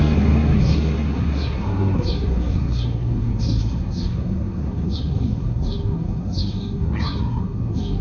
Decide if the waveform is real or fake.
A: fake